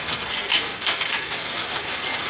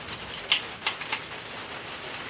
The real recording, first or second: second